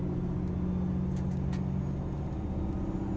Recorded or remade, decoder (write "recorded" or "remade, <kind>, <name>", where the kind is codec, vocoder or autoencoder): recorded